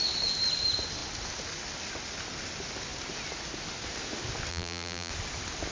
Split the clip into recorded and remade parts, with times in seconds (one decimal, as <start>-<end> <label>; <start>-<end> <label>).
0.0-4.5 recorded; 4.5-5.1 remade; 5.1-5.7 recorded